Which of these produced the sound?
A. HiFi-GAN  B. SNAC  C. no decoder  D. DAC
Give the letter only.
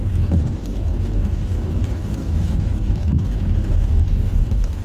D